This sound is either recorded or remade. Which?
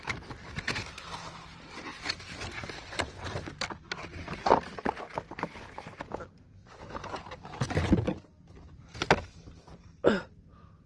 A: recorded